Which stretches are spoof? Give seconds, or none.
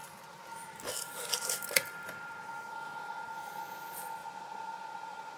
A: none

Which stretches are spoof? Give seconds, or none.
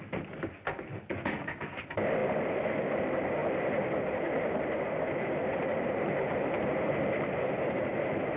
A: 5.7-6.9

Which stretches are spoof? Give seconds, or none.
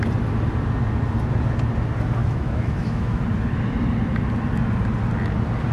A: 2.2-3.2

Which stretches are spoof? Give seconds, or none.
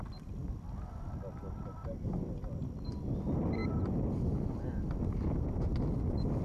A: 1.4-2.6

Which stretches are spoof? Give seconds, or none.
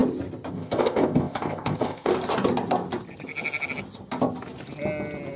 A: 0.5-2.1